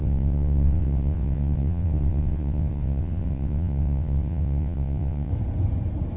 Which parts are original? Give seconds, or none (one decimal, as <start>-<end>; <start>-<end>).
5.3-6.2

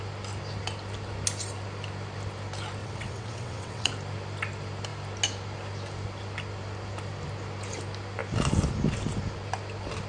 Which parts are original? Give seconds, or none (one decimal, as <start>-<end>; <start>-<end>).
0.0-2.8; 3.9-10.1

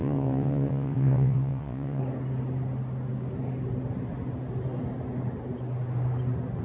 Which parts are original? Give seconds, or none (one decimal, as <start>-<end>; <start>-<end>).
2.0-6.6

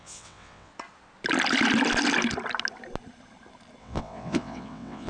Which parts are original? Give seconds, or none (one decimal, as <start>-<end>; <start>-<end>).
0.7-3.8